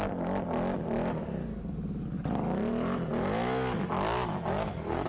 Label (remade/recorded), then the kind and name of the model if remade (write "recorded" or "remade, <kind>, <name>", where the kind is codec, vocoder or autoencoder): recorded